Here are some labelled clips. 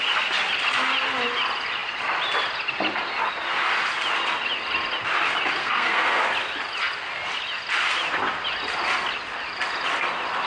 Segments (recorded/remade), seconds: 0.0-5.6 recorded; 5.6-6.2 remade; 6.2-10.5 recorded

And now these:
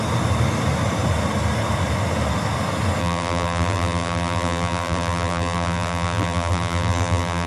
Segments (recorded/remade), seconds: 0.0-3.0 recorded; 3.0-7.5 remade

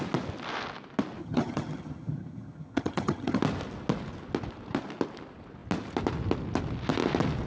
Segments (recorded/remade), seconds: 0.0-1.2 recorded; 1.2-3.4 remade; 3.4-7.5 recorded

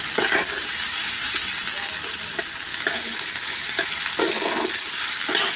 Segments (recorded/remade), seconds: 0.0-5.6 recorded

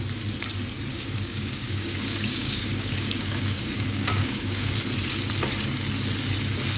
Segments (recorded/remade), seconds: 0.0-0.9 recorded; 0.9-4.7 remade; 4.7-6.8 recorded